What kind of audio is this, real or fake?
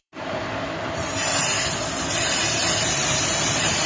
fake